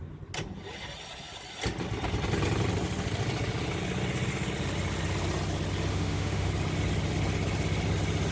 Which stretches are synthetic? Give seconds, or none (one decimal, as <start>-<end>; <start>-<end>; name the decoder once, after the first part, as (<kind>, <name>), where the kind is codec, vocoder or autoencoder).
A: 5.9-6.5 (autoencoder, DAC-VAE)

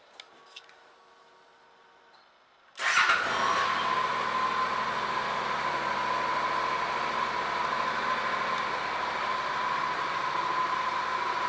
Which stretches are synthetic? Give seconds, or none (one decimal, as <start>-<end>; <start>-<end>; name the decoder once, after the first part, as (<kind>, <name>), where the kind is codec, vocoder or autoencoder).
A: none

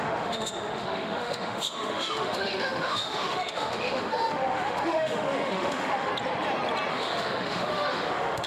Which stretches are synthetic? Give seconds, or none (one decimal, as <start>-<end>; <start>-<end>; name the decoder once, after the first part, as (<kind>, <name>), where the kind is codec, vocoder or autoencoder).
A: 0.0-6.1 (autoencoder, DAC-VAE); 6.9-8.5

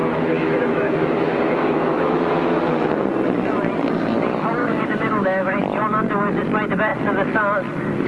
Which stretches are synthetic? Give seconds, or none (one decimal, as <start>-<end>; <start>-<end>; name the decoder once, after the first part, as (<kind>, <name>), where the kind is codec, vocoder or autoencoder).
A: 0.0-2.9 (autoencoder, DAC-VAE); 4.6-5.6

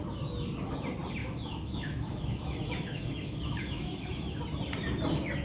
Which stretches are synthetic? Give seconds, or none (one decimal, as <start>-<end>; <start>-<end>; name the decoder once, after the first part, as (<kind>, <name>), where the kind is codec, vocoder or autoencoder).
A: 1.2-4.4 (autoencoder, DAC-VAE)

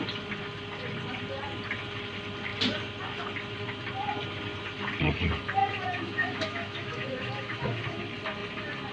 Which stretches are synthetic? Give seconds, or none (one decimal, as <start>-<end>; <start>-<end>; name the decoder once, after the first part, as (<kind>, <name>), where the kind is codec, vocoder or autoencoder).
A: 5.6-8.0 (autoencoder, DAC-VAE)